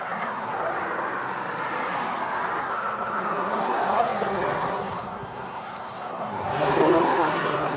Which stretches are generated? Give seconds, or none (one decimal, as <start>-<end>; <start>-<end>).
0.0-0.7; 2.6-7.8